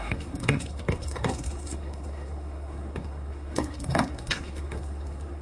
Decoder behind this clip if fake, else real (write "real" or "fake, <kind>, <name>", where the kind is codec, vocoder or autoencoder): fake, codec, SNAC